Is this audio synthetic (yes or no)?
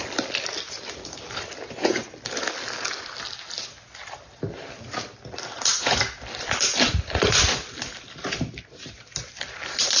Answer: no